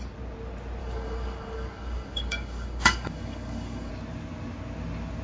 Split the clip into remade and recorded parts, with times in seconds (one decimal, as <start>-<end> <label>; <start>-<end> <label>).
0.0-0.8 recorded; 0.8-3.9 remade; 3.9-5.2 recorded